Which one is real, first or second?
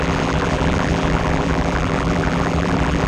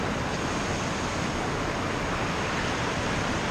second